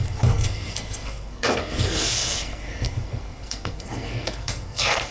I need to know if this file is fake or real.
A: fake